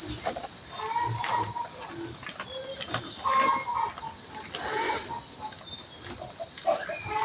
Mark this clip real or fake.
real